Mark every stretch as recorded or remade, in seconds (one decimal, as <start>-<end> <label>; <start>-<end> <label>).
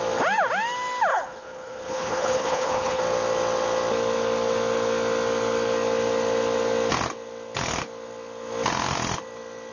0.0-1.1 recorded; 1.1-3.0 remade; 3.0-9.7 recorded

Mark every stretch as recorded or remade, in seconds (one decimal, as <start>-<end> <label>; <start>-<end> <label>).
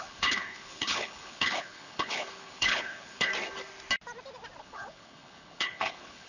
0.0-3.3 remade; 3.3-4.6 recorded; 4.6-6.3 remade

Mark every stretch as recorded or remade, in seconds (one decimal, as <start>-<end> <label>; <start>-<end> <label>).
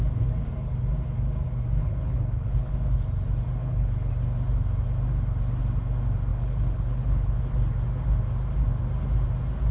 0.0-1.8 recorded; 1.8-2.7 remade; 2.7-3.6 recorded; 3.6-4.1 remade; 4.1-6.3 recorded; 6.3-7.4 remade; 7.4-9.7 recorded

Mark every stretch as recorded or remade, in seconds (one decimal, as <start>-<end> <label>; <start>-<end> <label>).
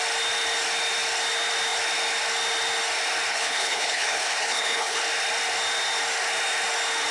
0.0-3.3 recorded; 3.3-5.0 remade; 5.0-7.1 recorded